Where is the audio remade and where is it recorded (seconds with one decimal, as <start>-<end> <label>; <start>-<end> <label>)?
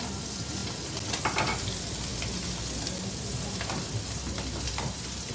0.0-5.3 recorded